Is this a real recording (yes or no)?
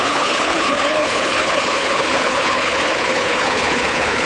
no